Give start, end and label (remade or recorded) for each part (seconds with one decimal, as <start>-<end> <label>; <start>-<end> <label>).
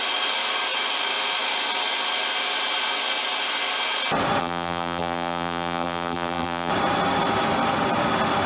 0.0-4.4 recorded; 4.4-6.7 remade; 6.7-8.5 recorded